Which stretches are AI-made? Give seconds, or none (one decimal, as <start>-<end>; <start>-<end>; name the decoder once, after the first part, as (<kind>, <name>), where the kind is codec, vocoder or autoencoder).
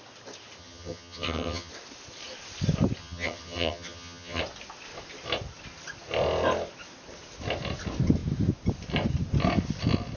0.6-1.7 (vocoder, HiFi-GAN); 3.0-4.4